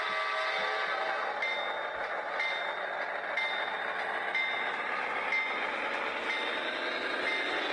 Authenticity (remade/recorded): recorded